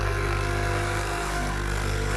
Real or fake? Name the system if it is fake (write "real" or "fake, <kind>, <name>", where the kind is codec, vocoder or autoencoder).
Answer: fake, codec, SNAC